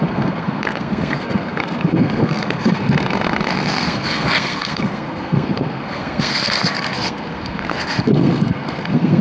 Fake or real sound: fake